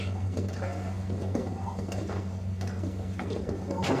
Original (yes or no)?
no